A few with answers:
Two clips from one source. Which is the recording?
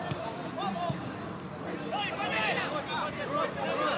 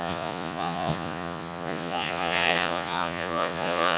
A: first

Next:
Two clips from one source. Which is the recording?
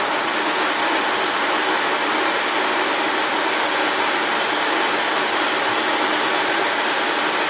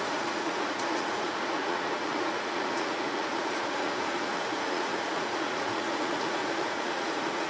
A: first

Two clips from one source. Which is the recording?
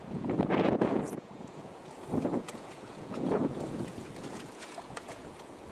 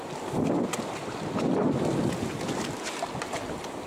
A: second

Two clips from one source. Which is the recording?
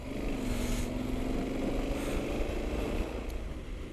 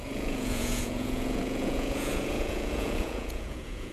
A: first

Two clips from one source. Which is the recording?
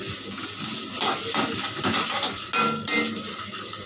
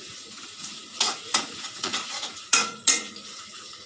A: first